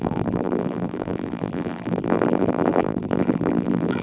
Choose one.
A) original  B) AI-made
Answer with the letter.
B